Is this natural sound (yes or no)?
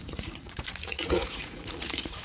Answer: no